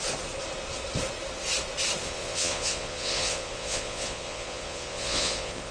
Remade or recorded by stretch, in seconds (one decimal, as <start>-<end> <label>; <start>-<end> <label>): 0.0-2.0 recorded; 2.0-5.7 remade